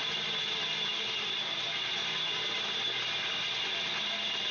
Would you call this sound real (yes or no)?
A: yes